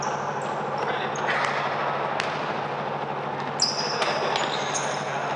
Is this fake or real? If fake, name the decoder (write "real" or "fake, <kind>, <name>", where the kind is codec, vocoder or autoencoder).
real